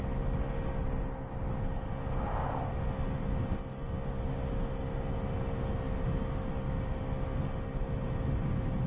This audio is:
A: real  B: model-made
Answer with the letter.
A